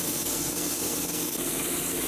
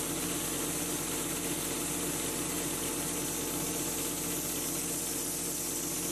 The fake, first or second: first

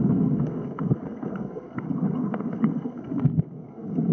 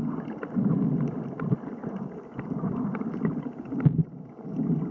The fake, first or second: first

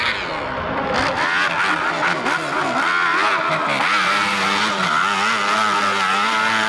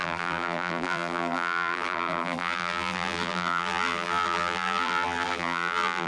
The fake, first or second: second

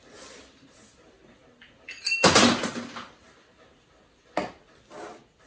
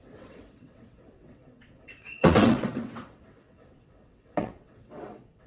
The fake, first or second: second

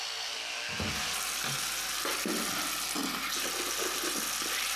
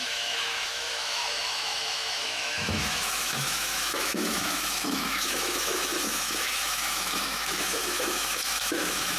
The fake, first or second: second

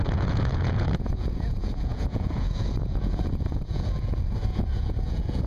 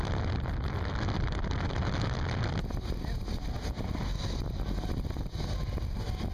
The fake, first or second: first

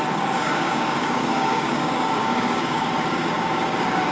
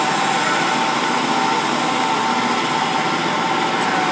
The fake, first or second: first